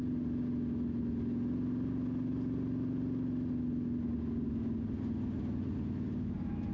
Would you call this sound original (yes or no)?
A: yes